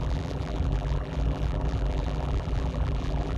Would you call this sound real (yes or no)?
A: no